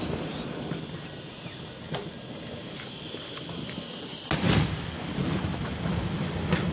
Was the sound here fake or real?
real